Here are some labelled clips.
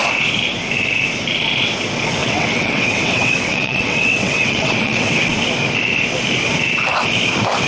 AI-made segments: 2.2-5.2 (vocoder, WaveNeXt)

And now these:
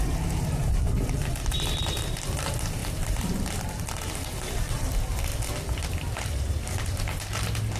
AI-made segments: 0.0-5.3 (vocoder, BigVGAN v2); 5.9-7.8

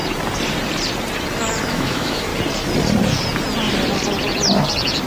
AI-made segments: 1.6-2.3 (autoencoder, DAC-VAE)

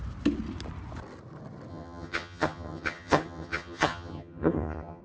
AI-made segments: 1.7-5.0 (vocoder, HiFi-GAN)

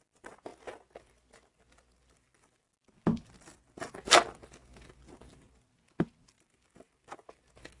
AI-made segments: none